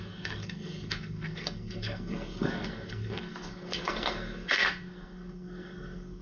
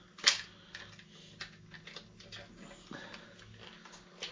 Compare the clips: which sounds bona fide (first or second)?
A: second